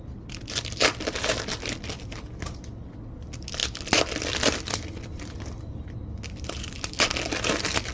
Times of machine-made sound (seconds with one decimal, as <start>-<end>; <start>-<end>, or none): none

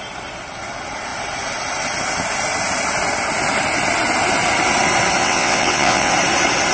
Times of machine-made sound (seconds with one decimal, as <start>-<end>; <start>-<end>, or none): 5.2-6.1

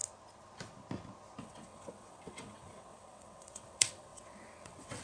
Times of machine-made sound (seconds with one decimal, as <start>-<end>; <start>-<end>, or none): 1.4-5.0

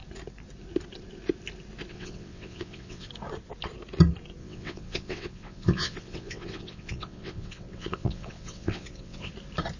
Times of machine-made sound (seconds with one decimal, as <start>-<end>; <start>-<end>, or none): 1.9-3.1; 4.4-9.3

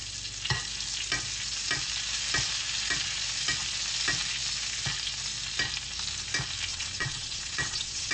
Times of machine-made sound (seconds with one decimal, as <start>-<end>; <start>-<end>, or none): 6.7-8.1

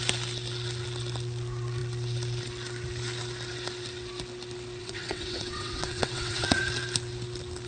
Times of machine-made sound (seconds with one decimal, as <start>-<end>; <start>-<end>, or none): 4.8-6.6

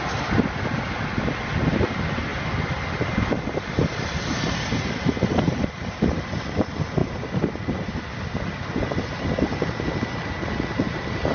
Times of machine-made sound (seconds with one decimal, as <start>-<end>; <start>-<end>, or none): none